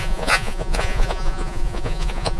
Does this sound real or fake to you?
fake